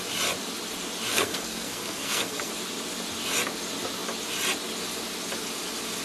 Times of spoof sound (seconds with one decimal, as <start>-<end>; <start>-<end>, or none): 1.1-2.5